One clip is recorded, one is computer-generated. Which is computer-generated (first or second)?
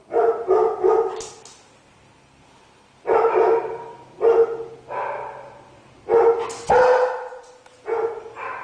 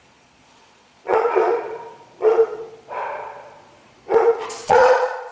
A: second